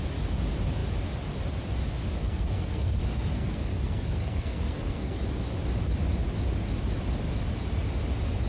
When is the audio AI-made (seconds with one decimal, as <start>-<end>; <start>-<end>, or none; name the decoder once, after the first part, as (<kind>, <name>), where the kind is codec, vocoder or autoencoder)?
2.2-5.2 (codec, SNAC)

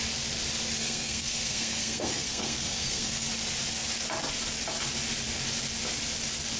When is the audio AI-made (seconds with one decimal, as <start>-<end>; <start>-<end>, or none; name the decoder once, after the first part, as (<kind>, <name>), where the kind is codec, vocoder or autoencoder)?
0.8-3.3 (codec, SNAC)